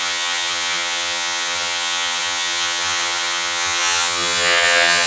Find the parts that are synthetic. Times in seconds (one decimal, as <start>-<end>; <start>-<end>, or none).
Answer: 0.0-5.1